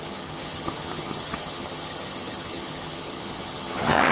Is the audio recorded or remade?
remade